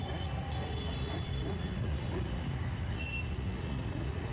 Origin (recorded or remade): remade